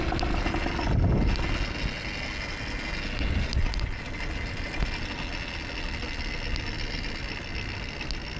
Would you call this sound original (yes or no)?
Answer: yes